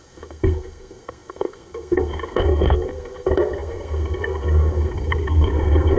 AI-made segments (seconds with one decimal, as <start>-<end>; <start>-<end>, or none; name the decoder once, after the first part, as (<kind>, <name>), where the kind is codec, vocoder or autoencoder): 0.0-6.0 (codec, SNAC)